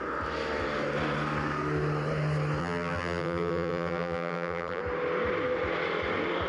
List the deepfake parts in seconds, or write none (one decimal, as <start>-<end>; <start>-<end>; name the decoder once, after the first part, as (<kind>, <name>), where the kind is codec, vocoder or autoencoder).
2.6-4.8 (vocoder, BigVGAN v2)